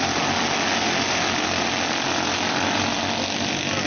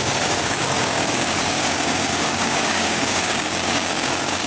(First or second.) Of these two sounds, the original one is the first